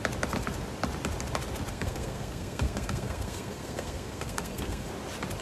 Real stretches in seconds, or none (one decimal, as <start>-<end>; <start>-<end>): 0.0-1.7; 4.9-5.4